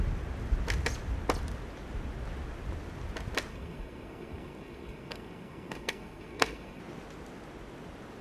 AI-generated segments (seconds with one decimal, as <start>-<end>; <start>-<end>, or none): 3.5-6.8